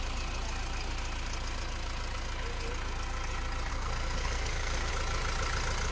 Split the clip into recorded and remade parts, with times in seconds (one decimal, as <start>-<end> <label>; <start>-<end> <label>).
0.0-3.7 recorded; 3.7-4.9 remade; 4.9-5.9 recorded